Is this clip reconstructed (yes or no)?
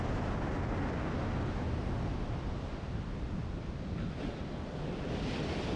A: no